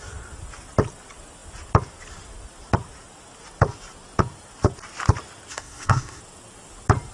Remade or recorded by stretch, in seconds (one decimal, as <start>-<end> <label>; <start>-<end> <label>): 0.0-5.5 recorded; 5.5-6.2 remade; 6.2-7.1 recorded